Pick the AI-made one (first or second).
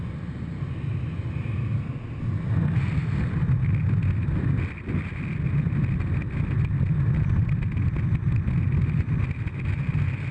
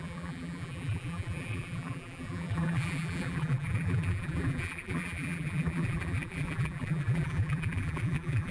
second